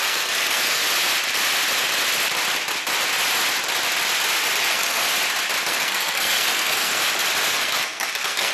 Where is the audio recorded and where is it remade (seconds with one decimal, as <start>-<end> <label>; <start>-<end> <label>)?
0.0-0.8 remade; 0.8-4.6 recorded; 4.6-5.0 remade; 5.0-5.6 recorded; 5.6-7.0 remade; 7.0-7.5 recorded; 7.5-8.5 remade